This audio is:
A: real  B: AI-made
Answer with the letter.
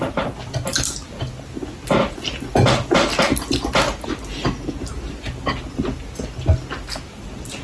A